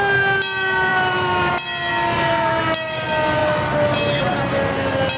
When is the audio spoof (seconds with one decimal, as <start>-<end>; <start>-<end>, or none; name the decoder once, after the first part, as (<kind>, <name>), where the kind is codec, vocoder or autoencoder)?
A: 0.9-1.5 (vocoder, BigVGAN v2); 1.9-2.5